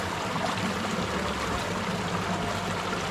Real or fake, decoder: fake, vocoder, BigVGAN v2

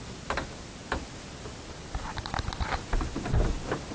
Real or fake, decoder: real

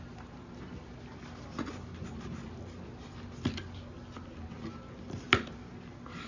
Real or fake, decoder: real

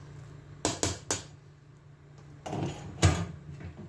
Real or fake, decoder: real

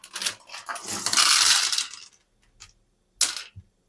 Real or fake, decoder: real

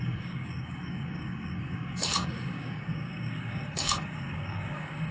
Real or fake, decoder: fake, codec, DAC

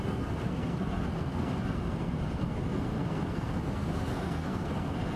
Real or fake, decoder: fake, codec, SNAC